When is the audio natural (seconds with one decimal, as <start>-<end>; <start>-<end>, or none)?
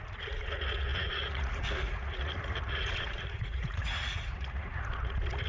none